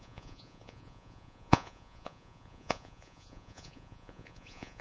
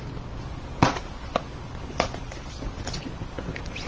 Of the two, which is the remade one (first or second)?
first